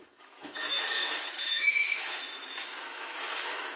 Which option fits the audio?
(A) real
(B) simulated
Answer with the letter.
B